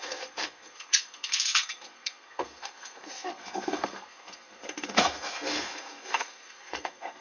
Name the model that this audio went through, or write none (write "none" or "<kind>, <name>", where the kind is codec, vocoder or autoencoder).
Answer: codec, SNAC